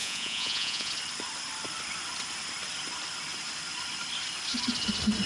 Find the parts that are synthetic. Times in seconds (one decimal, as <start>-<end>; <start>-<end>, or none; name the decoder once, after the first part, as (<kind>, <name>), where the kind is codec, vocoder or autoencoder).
0.0-0.9 (vocoder, Vocos)